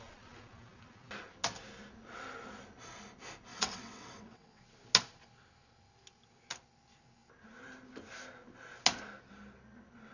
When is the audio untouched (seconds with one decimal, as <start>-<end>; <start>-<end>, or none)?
0.0-3.5; 4.6-10.1

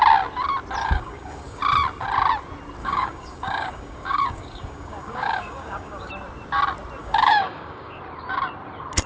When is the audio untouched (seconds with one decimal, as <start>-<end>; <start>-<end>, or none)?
0.0-0.8; 1.6-2.8; 6.1-7.0; 8.0-9.1

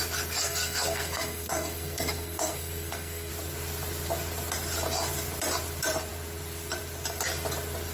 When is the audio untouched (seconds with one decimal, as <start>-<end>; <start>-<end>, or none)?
0.0-0.4; 3.3-7.9

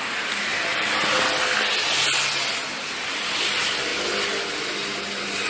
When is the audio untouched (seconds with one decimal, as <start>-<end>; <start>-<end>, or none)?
0.0-5.5

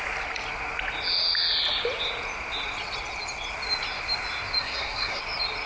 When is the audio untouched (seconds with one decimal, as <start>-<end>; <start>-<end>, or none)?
0.0-4.6; 5.2-5.7

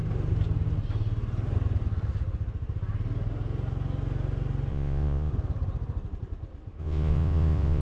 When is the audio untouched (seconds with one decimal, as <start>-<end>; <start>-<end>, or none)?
0.0-4.7; 5.3-6.8

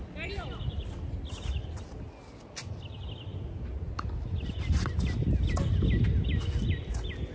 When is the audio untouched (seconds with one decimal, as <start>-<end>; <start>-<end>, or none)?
0.0-7.3